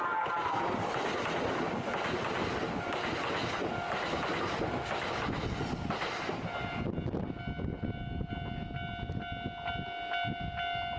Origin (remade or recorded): recorded